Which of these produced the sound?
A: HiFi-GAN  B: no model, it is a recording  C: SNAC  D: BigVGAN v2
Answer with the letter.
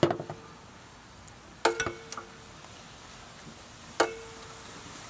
B